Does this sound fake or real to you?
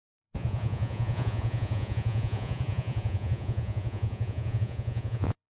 fake